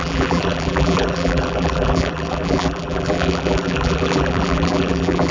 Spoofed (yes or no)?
yes